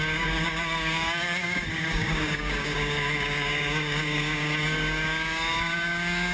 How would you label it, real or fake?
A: fake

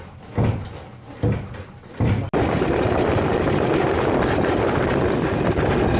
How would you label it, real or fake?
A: real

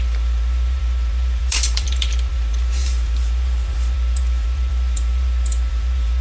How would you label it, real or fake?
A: fake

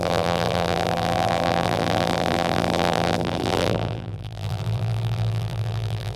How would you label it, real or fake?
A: fake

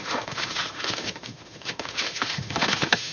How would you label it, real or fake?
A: fake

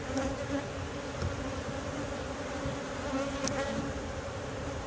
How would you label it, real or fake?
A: real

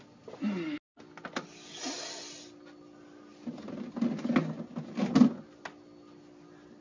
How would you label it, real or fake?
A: real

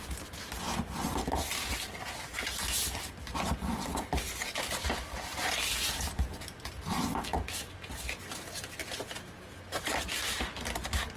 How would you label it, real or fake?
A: real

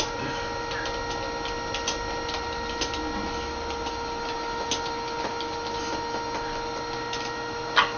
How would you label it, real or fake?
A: real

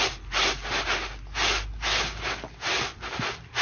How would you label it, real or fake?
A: real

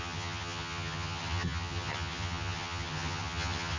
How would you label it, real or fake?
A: fake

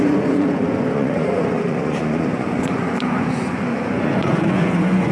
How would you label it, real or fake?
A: fake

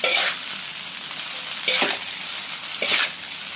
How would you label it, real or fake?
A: real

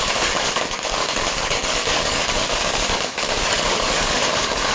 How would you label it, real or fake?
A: fake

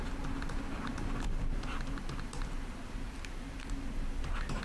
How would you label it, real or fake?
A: real